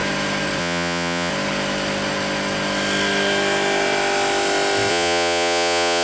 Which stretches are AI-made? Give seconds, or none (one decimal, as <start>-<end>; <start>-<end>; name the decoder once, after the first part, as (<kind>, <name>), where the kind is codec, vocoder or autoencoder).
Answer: 0.6-1.3 (vocoder, Vocos); 4.9-6.0